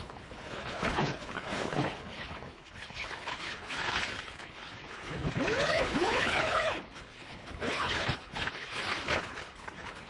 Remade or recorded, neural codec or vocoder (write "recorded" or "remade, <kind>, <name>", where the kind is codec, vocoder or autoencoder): remade, codec, HILCodec